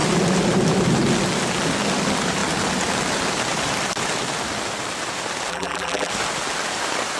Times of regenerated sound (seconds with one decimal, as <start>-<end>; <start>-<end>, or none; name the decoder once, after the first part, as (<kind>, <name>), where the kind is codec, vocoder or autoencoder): 5.5-6.1 (vocoder, BigVGAN v2)

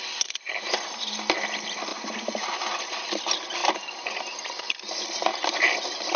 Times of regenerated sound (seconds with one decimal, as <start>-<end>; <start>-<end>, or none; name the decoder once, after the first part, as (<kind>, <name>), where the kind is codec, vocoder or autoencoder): 0.0-3.6 (vocoder, BigVGAN v2); 4.5-5.3

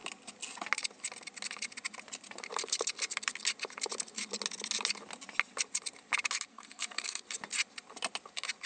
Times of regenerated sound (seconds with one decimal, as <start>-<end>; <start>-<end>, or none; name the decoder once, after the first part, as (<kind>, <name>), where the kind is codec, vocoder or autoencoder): 6.5-7.2 (codec, SNAC)

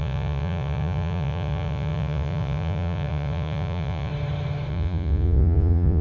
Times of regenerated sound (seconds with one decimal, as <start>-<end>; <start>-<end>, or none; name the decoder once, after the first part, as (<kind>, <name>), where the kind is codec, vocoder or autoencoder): 0.0-4.1 (vocoder, Vocos); 4.7-6.0

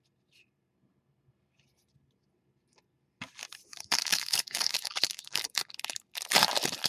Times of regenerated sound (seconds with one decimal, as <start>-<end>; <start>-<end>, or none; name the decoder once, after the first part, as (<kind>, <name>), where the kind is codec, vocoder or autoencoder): 3.7-5.7 (codec, DAC)

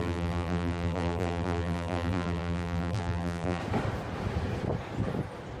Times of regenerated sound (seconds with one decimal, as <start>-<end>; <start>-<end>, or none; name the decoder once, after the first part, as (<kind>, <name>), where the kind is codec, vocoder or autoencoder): 0.0-3.6 (vocoder, BigVGAN v2)

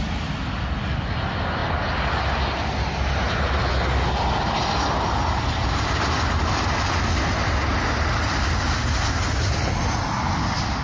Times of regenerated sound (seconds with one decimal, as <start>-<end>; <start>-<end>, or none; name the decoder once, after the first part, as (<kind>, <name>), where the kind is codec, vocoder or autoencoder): none